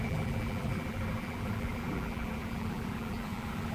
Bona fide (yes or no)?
no